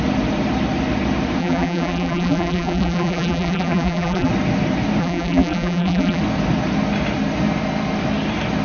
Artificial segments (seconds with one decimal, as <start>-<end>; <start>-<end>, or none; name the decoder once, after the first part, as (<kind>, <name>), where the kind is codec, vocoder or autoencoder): 1.4-4.3 (vocoder, BigVGAN v2); 5.0-6.2